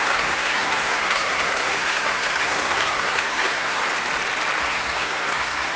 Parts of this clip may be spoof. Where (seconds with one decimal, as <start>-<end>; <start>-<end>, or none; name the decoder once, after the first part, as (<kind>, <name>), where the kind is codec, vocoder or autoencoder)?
0.0-3.8 (codec, SNAC); 4.6-5.8